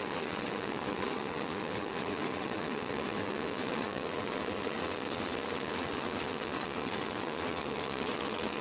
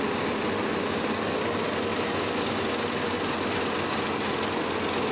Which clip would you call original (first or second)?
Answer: second